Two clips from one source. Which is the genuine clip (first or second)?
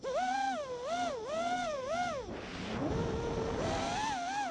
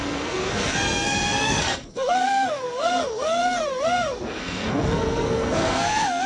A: first